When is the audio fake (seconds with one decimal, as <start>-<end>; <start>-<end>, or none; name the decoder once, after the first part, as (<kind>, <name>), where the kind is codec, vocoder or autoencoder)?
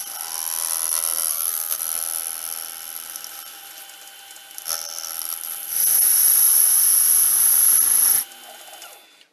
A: 1.3-1.8 (codec, SNAC)